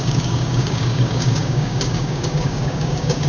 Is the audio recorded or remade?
remade